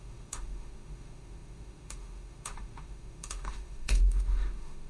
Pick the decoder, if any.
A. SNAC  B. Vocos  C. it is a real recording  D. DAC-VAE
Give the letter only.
D